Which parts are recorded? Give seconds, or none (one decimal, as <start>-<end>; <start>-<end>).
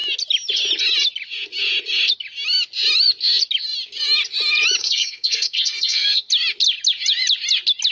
0.0-4.8; 6.3-7.9